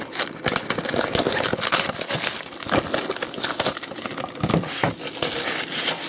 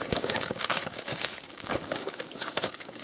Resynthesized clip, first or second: second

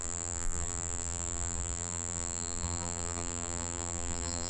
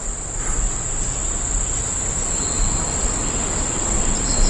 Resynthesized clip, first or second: first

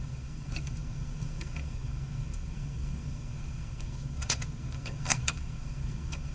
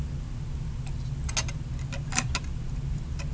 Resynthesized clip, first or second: first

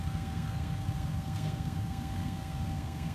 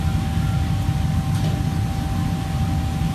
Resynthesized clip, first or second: first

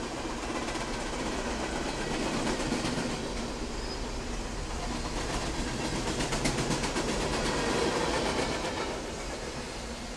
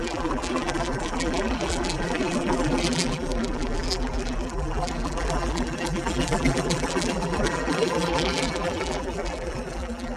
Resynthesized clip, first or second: second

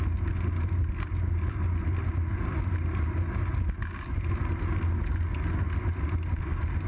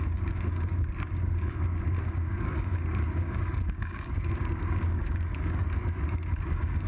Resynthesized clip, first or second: second